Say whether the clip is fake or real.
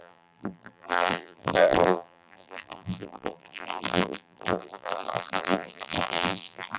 fake